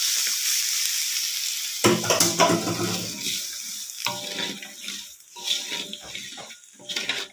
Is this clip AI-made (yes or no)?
no